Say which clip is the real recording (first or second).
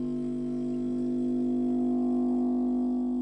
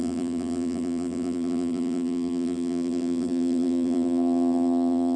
first